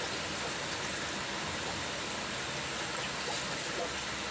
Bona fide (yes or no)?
yes